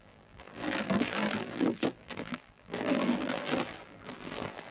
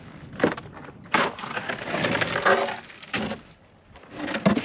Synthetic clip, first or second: first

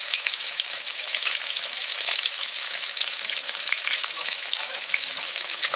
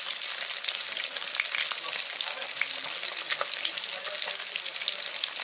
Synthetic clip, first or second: first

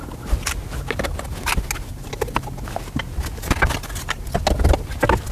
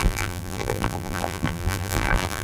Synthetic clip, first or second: second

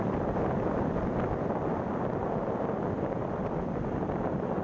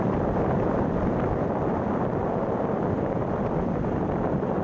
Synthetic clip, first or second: second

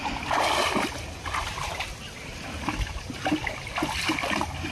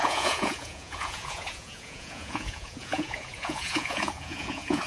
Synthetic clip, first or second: second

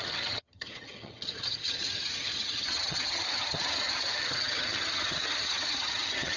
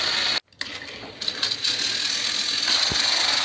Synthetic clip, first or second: first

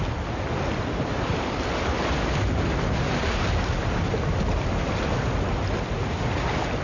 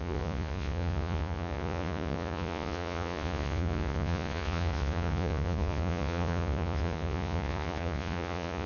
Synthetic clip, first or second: second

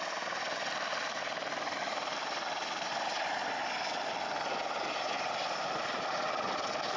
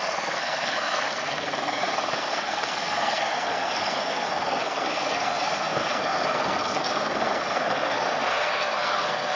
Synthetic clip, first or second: second